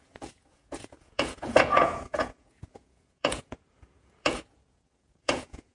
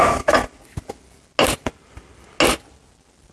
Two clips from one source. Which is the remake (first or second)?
first